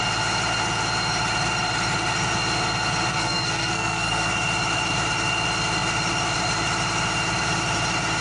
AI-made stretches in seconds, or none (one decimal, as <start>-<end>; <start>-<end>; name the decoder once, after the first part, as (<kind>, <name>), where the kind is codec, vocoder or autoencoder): 3.1-4.3 (codec, SNAC)